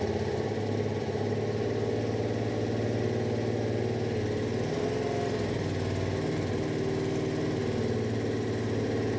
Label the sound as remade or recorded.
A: recorded